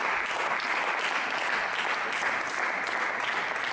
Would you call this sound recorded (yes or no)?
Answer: yes